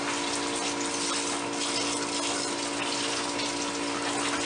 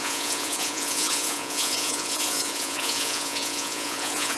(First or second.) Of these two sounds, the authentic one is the first